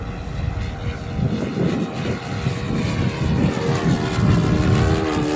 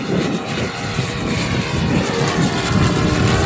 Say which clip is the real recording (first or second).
first